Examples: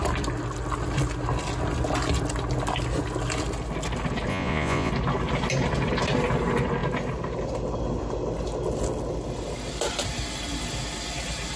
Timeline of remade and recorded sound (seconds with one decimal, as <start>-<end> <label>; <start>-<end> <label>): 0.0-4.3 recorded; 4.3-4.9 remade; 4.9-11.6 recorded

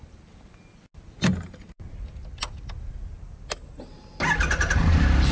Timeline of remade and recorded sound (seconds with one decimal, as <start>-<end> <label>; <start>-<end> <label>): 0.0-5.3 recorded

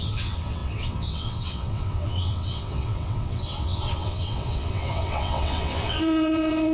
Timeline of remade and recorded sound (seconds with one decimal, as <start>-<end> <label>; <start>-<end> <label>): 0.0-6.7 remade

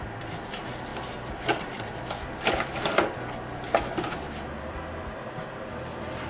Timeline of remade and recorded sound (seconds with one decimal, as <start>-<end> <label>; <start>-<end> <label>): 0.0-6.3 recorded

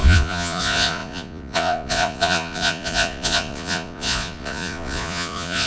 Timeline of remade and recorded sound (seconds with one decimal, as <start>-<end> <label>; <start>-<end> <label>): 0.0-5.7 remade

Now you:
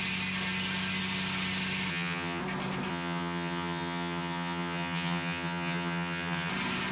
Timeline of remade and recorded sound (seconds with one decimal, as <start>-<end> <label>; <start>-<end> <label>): 0.0-1.9 recorded; 1.9-2.4 remade; 2.4-2.9 recorded; 2.9-6.5 remade; 6.5-6.9 recorded